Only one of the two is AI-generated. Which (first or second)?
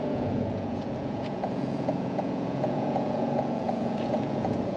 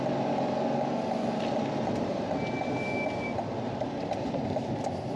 first